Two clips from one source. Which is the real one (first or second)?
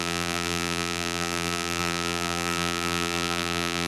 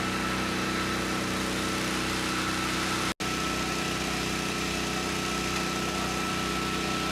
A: second